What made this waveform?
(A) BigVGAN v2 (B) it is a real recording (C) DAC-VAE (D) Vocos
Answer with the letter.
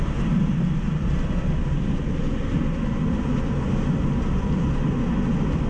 B